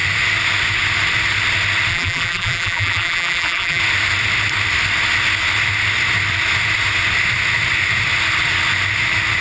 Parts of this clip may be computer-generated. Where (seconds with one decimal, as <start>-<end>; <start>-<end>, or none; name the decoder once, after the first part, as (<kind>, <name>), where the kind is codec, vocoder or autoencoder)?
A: 1.9-3.8 (vocoder, BigVGAN v2)